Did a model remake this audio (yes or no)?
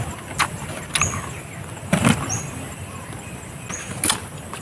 no